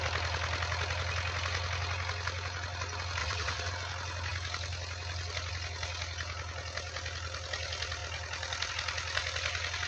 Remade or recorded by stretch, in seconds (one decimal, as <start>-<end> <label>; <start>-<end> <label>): 0.0-3.2 recorded; 3.2-3.7 remade; 3.7-9.9 recorded